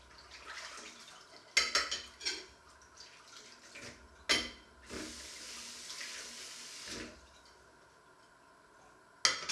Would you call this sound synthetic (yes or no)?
no